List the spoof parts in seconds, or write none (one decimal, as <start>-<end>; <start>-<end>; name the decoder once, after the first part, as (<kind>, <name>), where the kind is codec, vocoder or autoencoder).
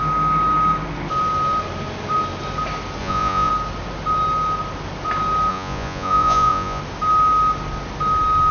3.0-3.5 (vocoder, Vocos); 5.5-6.8